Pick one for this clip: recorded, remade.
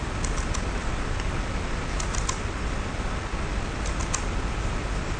recorded